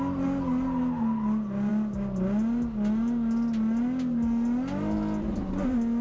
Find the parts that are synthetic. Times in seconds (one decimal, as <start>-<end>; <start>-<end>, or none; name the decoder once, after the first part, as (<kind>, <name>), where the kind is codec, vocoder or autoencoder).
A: none